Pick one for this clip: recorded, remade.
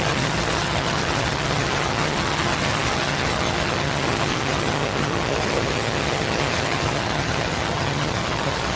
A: remade